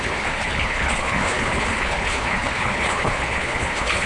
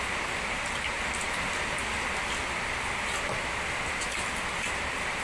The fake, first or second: first